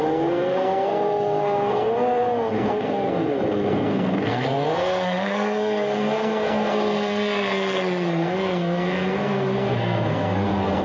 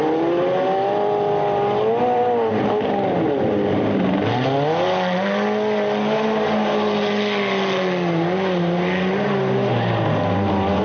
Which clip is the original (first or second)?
second